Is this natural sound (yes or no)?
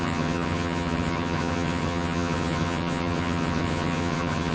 no